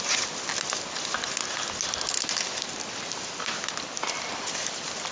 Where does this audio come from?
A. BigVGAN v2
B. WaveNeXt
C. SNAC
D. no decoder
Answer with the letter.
D